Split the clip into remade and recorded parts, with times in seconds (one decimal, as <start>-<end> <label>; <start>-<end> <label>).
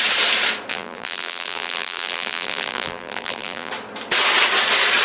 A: 0.0-0.7 recorded; 0.7-3.7 remade; 3.7-5.0 recorded